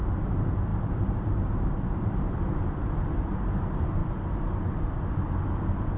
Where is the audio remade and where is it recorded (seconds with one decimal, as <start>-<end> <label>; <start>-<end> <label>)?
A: 0.0-0.7 recorded; 0.7-3.4 remade; 3.4-4.0 recorded; 4.0-4.7 remade; 4.7-6.0 recorded